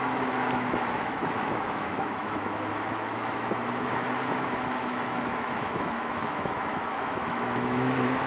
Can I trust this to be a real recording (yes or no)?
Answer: no